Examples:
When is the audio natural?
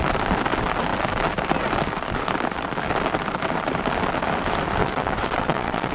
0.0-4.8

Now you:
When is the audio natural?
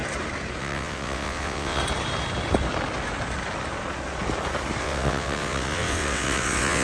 0.0-0.6; 1.8-4.8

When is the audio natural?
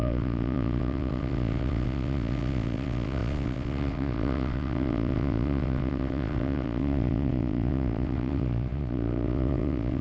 none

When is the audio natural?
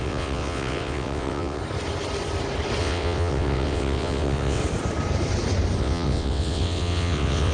1.6-2.8; 4.6-5.8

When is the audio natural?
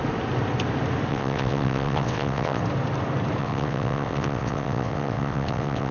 0.0-1.1; 2.6-3.4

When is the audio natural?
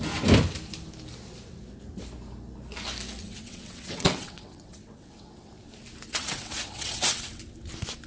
0.0-3.2; 5.5-6.1; 7.4-8.1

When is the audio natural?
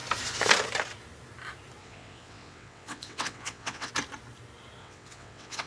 0.0-1.8; 3.9-4.8